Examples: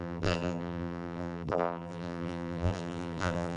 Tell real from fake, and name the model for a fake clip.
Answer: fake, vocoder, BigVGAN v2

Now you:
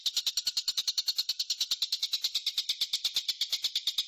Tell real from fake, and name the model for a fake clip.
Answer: real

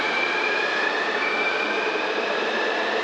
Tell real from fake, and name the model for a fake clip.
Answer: fake, vocoder, BigVGAN v2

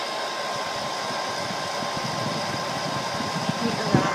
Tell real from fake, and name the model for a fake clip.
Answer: fake, vocoder, BigVGAN v2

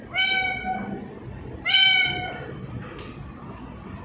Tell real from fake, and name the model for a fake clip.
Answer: real